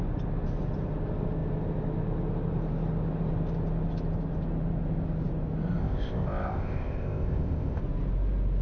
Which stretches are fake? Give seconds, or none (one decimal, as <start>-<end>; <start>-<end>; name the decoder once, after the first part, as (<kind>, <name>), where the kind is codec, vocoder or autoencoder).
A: 5.8-7.8 (codec, ZipCodec)

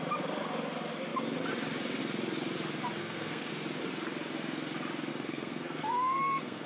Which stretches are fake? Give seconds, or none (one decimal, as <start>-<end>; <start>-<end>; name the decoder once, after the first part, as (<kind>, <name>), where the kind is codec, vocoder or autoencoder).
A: 3.0-3.5 (codec, SNAC); 5.1-6.7

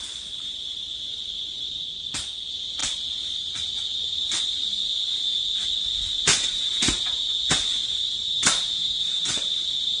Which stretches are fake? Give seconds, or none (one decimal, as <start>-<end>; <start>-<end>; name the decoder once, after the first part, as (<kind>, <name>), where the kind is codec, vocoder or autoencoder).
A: 0.9-2.0 (vocoder, Vocos); 9.1-9.6

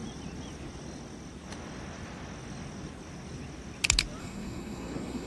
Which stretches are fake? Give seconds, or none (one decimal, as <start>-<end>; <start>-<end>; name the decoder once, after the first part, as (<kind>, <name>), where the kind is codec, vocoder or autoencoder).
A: 4.2-5.3 (codec, SNAC)

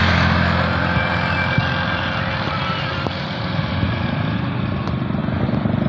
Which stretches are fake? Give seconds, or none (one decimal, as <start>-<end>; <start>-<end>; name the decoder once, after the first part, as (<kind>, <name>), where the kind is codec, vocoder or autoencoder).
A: none

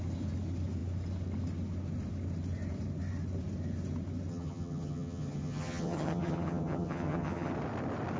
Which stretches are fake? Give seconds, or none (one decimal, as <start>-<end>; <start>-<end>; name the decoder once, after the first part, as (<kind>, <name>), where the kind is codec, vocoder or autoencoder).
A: 4.3-7.5 (vocoder, HiFi-GAN)

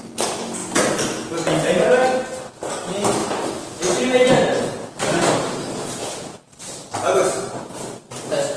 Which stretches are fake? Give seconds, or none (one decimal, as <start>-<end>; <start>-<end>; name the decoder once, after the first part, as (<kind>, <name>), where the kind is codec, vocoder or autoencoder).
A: none